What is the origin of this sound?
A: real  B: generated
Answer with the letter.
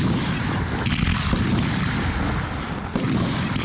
A